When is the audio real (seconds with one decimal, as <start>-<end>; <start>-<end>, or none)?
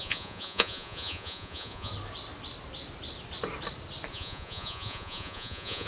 1.9-4.1